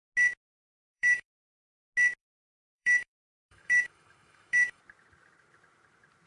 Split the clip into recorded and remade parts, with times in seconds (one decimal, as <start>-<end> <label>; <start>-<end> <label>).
0.0-0.5 recorded; 0.5-1.5 remade; 1.5-2.2 recorded; 2.2-4.8 remade; 4.8-6.3 recorded